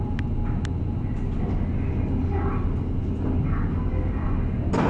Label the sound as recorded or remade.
recorded